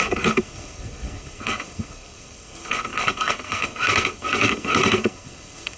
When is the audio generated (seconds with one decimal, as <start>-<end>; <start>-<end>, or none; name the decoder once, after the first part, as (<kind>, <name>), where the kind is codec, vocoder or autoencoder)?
0.0-5.8 (codec, SNAC)